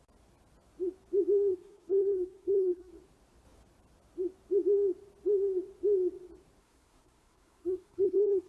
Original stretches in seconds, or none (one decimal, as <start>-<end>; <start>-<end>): 0.0-1.5; 2.9-6.6